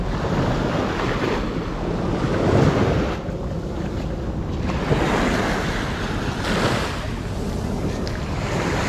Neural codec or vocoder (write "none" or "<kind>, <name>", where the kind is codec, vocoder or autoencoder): none